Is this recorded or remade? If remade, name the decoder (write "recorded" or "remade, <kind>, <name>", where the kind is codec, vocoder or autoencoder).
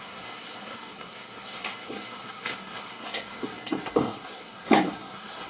remade, codec, SNAC